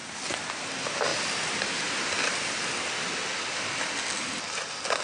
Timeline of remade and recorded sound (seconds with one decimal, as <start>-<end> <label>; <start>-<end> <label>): 0.0-5.0 recorded